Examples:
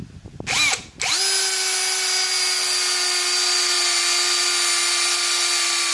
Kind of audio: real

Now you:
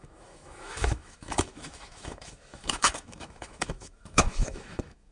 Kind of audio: fake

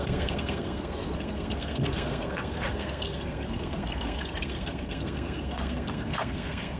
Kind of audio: fake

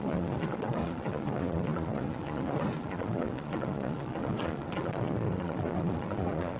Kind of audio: fake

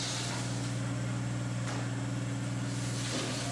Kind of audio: real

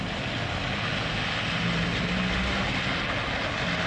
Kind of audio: real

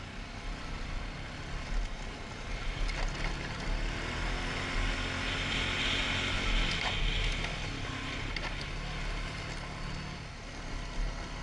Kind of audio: real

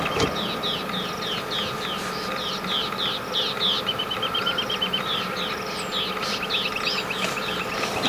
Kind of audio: fake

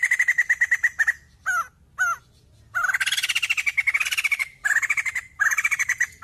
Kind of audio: real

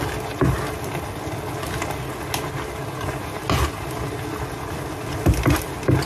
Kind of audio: real